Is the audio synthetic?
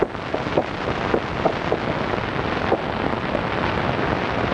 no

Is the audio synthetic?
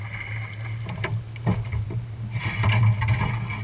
no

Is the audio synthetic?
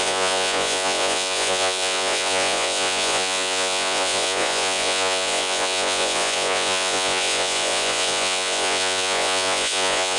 yes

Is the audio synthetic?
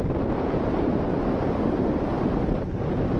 no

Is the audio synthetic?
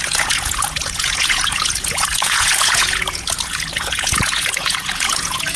yes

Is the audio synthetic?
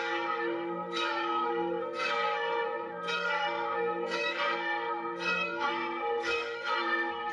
yes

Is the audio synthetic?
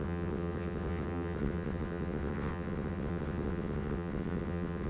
yes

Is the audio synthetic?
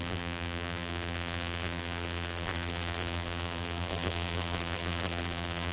yes